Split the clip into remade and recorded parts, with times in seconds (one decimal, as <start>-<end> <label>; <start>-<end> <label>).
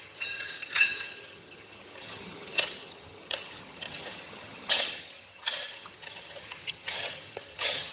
0.0-7.9 remade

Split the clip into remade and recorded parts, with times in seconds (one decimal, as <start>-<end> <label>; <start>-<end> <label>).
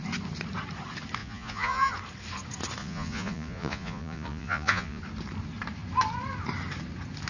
0.0-1.2 recorded; 1.2-1.9 remade; 1.9-2.8 recorded; 2.8-5.0 remade; 5.0-7.3 recorded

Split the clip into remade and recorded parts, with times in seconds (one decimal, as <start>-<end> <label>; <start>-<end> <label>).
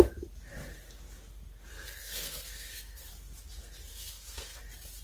0.0-1.7 recorded; 1.7-3.1 remade; 3.1-3.9 recorded; 3.9-4.6 remade; 4.6-5.0 recorded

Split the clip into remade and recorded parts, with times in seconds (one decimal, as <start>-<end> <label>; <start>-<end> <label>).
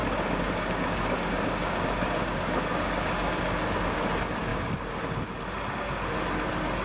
0.0-4.1 remade; 4.1-4.5 recorded; 4.5-5.1 remade; 5.1-6.8 recorded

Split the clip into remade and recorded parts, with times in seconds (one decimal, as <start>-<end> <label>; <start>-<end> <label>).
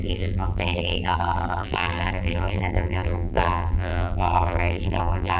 0.0-5.4 remade